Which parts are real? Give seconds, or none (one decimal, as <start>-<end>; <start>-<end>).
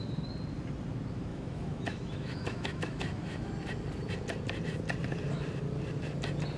0.0-1.3; 3.5-6.6